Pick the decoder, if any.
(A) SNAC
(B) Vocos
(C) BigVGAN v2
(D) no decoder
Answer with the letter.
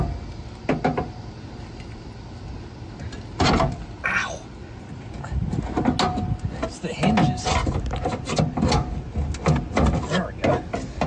D